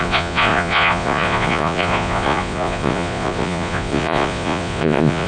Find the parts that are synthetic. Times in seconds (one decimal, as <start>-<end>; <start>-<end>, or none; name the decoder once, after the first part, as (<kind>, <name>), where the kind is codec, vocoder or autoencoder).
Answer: 0.0-5.3 (vocoder, Vocos)